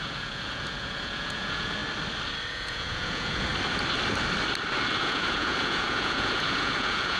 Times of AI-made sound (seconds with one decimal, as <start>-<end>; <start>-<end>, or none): 0.0-1.8; 2.5-3.5; 4.9-7.2